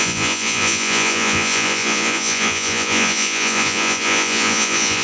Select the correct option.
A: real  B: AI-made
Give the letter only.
B